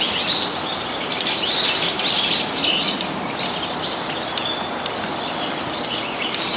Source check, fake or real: real